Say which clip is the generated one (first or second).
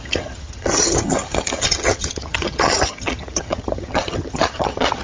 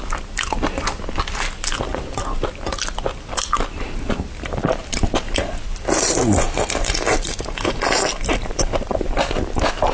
first